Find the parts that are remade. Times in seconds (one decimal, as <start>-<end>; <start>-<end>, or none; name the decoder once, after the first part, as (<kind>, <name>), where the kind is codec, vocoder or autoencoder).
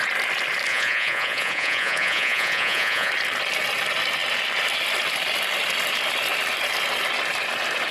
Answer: 0.7-3.1 (vocoder, Vocos)